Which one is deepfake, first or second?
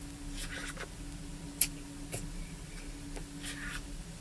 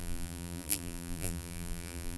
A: second